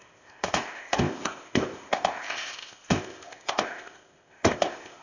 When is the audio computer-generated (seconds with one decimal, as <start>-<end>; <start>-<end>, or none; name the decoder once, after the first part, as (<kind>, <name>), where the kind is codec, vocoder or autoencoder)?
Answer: 0.0-5.0 (codec, ZipCodec)